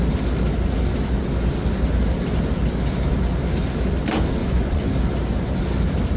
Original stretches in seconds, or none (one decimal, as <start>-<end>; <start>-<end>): 0.0-4.4; 4.9-6.2